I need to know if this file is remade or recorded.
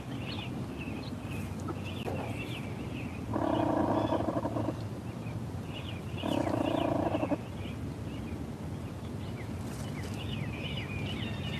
recorded